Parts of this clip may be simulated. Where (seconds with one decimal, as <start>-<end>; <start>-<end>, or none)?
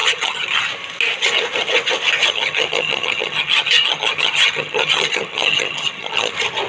0.0-0.6; 2.3-6.3